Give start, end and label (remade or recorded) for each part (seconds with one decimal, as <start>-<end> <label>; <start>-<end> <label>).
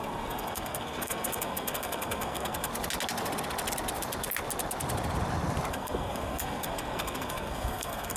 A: 0.0-2.7 remade; 2.7-5.7 recorded; 5.7-8.2 remade